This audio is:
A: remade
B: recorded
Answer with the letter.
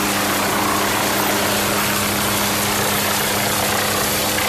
B